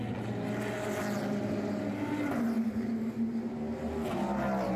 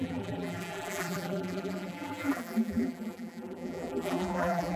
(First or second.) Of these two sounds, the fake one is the second